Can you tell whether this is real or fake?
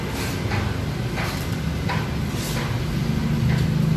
real